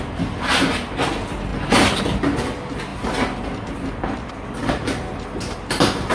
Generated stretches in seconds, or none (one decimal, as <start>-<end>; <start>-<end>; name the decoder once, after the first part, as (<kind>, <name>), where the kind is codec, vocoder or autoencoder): 1.5-2.0 (vocoder, BigVGAN v2)

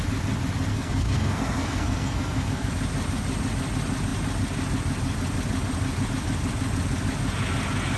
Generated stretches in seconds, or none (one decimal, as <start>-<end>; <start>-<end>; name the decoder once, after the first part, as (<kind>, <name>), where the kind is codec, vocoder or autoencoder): 0.7-2.7 (codec, SNAC)

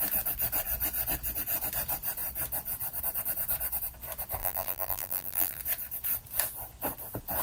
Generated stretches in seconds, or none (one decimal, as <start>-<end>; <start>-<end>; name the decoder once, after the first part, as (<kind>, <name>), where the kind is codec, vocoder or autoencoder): 4.4-5.6 (vocoder, BigVGAN v2)

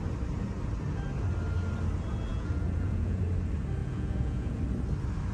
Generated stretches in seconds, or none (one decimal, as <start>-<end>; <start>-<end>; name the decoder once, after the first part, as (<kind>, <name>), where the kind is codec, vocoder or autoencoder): 2.3-3.2 (vocoder, Vocos); 3.8-4.6

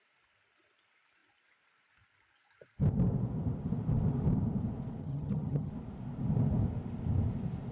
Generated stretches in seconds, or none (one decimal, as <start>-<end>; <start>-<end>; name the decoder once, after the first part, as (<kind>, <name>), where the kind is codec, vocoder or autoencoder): 5.0-5.7 (vocoder, HiFi-GAN)

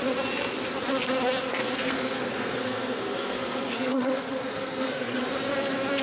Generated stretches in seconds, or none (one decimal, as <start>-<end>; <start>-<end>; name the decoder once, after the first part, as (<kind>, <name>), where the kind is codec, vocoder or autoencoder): 1.6-5.2 (codec, SNAC)